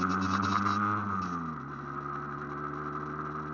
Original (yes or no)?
yes